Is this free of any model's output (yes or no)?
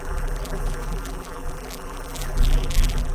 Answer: no